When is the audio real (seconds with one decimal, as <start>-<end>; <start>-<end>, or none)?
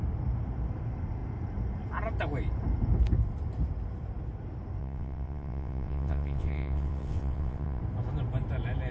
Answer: 0.0-4.8; 7.8-8.9